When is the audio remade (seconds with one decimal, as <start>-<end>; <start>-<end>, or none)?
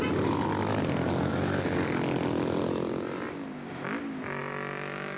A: none